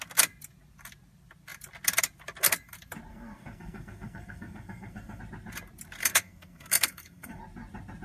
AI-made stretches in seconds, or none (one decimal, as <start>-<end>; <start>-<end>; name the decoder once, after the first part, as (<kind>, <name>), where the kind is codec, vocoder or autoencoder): 3.1-5.2 (codec, SNAC); 6.0-7.4